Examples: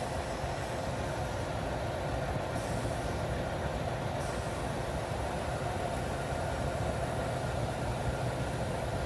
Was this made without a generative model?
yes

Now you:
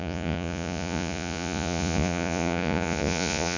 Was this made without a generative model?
no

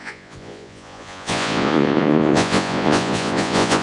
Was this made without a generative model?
no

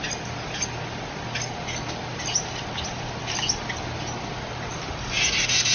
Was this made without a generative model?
yes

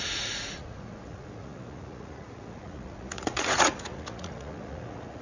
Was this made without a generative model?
no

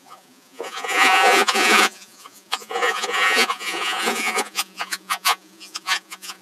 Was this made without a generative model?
no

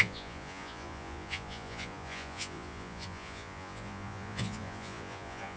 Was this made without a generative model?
no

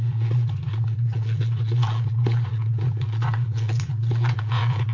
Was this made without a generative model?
no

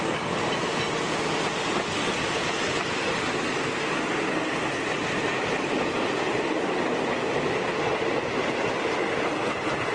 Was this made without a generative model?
yes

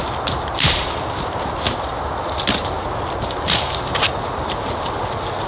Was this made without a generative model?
yes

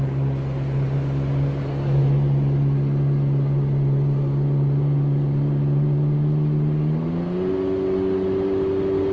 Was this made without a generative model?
yes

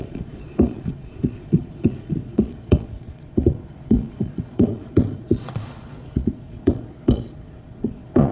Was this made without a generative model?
no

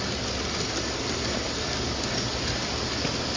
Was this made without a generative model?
yes